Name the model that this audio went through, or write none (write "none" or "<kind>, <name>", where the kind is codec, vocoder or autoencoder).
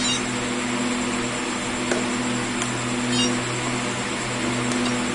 none